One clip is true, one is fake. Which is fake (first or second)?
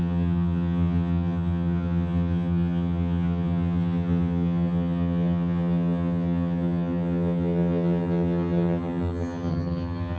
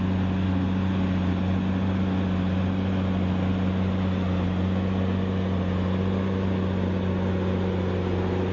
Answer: first